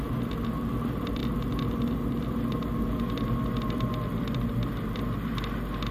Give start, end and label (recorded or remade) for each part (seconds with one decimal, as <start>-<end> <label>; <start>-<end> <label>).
0.0-5.9 recorded

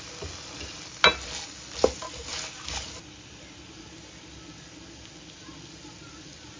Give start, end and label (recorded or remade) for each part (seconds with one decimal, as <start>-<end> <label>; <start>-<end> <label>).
0.0-6.6 recorded

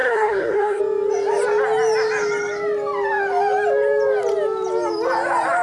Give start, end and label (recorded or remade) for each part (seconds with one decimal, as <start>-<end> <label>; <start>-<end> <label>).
0.0-0.8 remade; 0.8-5.6 recorded

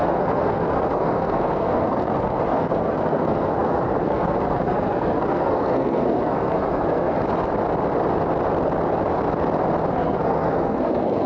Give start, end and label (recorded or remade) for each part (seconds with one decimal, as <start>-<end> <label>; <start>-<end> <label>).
0.0-7.2 remade; 7.2-9.9 recorded; 9.9-11.3 remade

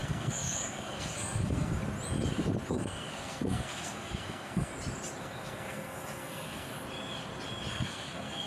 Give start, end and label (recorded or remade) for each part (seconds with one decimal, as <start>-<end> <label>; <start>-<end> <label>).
0.0-1.8 remade; 1.8-2.7 recorded; 2.7-4.7 remade; 4.7-5.2 recorded; 5.2-6.7 remade; 6.7-7.7 recorded; 7.7-8.5 remade

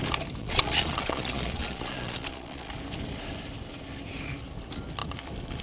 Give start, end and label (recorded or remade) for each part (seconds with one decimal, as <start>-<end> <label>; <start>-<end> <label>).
0.0-0.4 recorded; 0.4-2.7 remade; 2.7-5.6 recorded

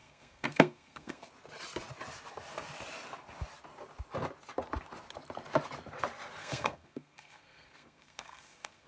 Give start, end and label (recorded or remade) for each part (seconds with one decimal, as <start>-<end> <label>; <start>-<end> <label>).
0.0-1.3 remade; 1.3-6.4 recorded; 6.4-8.9 remade